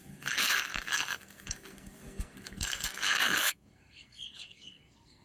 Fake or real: fake